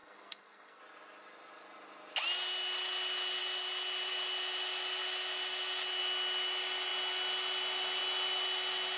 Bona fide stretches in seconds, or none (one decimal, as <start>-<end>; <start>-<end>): 0.8-9.0